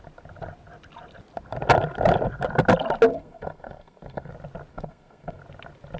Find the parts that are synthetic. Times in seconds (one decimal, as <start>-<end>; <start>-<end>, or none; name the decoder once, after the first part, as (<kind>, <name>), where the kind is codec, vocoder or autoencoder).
3.1-4.3 (codec, SNAC); 4.7-5.4